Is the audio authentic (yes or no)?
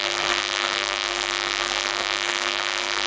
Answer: no